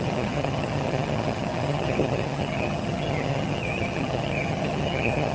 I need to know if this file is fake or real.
fake